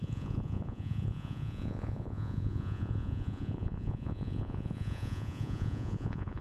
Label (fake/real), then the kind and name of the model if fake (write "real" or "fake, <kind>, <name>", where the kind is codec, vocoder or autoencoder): fake, vocoder, Vocos